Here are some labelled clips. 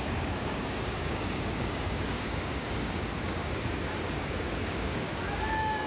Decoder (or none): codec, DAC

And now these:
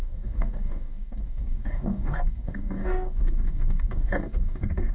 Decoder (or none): codec, DAC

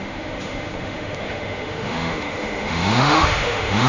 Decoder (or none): autoencoder, DAC-VAE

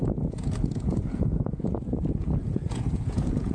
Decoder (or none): vocoder, Vocos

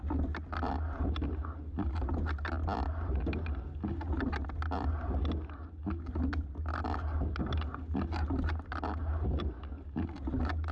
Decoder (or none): none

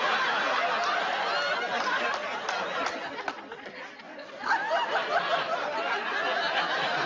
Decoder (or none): none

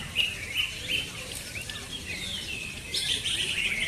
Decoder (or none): none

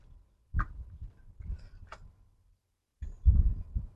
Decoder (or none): vocoder, BigVGAN v2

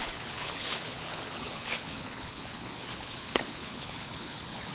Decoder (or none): codec, HILCodec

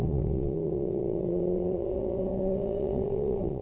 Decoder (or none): vocoder, WaveNeXt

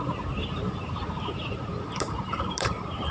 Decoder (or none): vocoder, BigVGAN v2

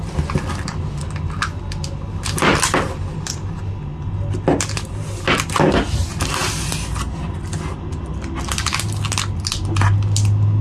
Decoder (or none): none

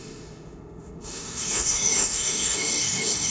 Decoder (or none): autoencoder, DAC-VAE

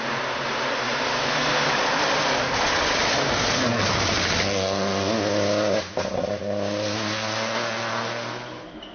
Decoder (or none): none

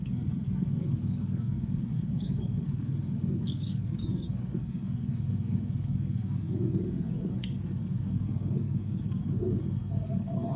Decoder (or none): codec, SNAC